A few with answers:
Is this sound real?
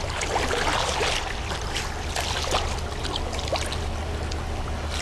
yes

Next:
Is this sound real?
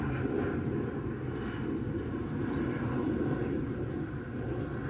yes